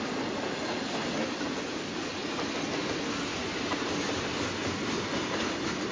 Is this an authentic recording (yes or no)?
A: yes